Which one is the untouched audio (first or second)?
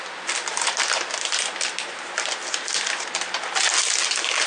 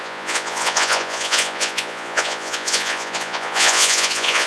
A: first